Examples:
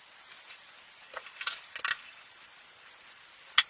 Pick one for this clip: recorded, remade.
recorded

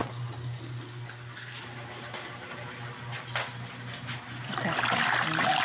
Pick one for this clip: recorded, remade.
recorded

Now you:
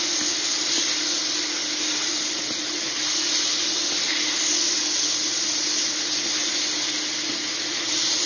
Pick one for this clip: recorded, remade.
recorded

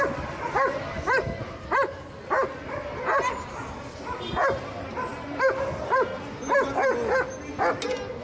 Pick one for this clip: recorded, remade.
recorded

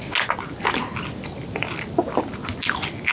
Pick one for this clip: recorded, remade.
recorded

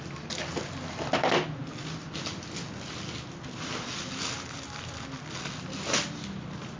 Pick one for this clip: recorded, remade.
recorded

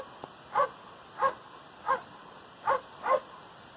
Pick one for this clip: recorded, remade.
recorded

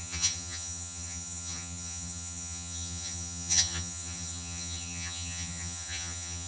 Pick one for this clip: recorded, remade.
remade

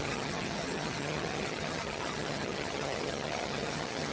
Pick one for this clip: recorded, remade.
remade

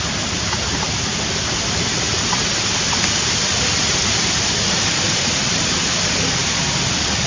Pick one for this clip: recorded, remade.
recorded